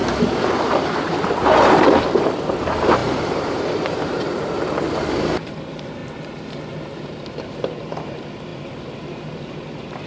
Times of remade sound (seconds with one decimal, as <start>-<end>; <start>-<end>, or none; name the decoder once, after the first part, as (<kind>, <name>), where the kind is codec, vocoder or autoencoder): 0.0-10.1 (vocoder, BigVGAN v2)